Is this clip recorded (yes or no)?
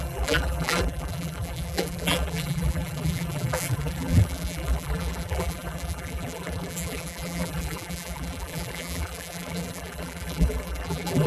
no